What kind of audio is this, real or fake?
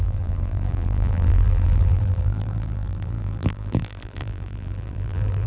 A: fake